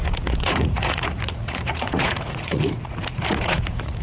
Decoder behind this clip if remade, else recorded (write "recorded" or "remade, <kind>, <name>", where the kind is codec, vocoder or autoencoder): remade, vocoder, Vocos